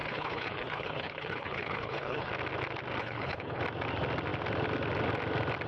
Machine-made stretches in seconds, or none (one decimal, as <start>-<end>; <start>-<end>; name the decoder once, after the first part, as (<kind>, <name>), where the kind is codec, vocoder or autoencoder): 0.0-2.3 (codec, HILCodec); 3.0-3.6